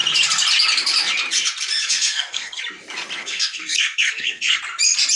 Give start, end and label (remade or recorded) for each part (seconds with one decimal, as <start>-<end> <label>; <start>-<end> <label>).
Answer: 0.0-1.8 recorded; 1.8-2.6 remade; 2.6-3.2 recorded; 3.2-4.6 remade; 4.6-5.2 recorded